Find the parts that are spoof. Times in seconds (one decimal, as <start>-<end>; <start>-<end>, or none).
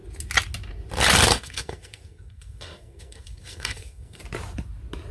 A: 1.3-4.2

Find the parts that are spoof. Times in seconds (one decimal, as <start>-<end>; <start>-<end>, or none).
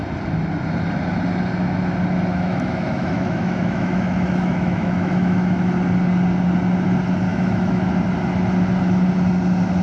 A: 2.3-5.7; 7.3-7.9